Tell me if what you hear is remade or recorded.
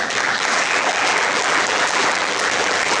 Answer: remade